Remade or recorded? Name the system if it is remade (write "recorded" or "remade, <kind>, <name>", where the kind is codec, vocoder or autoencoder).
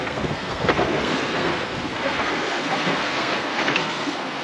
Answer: remade, codec, SNAC